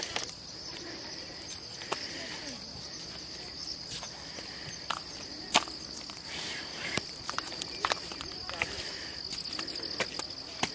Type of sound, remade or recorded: recorded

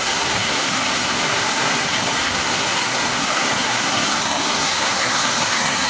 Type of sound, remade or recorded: remade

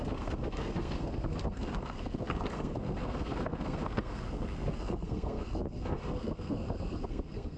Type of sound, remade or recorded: remade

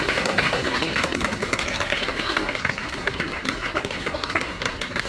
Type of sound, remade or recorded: remade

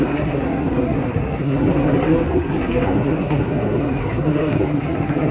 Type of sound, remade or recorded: remade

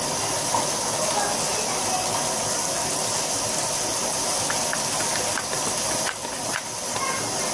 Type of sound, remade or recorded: recorded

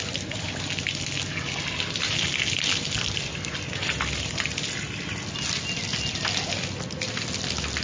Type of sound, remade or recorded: recorded